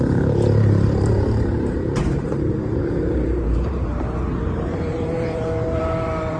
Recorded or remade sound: remade